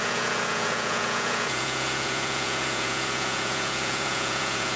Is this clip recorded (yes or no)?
no